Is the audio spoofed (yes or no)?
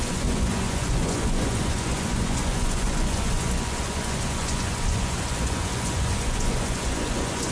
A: yes